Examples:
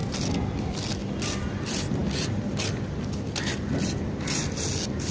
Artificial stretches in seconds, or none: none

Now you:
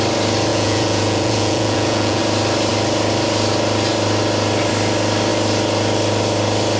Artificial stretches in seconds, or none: 0.5-2.2 (vocoder, Vocos)